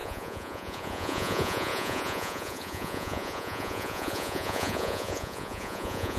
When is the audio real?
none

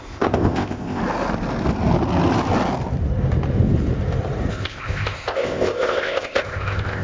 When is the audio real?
1.0-4.5

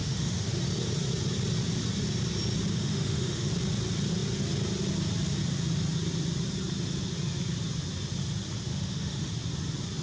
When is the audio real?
0.6-2.7; 3.5-8.7; 9.3-10.0

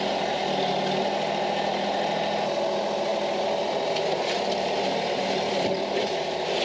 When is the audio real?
0.0-3.1